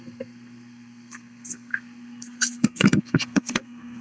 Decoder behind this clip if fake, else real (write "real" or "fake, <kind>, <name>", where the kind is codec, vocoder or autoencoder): fake, codec, SNAC